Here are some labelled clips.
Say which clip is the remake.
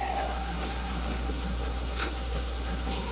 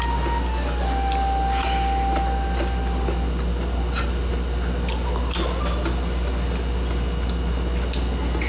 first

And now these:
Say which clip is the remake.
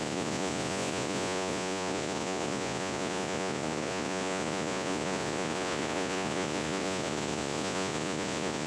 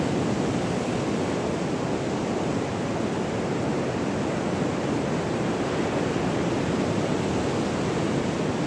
first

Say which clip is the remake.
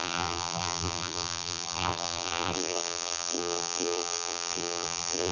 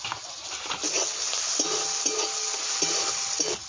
first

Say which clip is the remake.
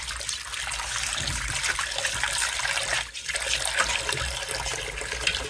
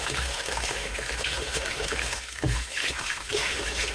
second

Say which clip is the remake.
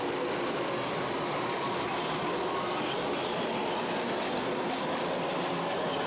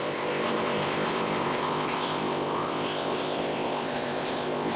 second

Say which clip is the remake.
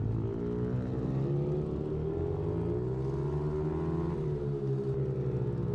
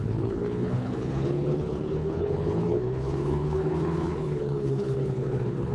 second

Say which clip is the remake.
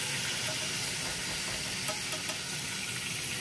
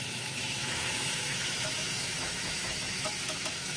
second